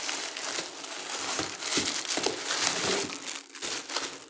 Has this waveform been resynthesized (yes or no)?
no